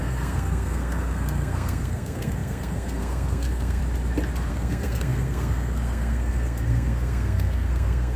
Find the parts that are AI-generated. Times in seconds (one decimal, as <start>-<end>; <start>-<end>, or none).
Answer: 0.0-3.8; 4.5-8.2